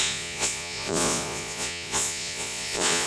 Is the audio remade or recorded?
remade